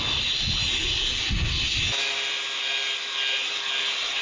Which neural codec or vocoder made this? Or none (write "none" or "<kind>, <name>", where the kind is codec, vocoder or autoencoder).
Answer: none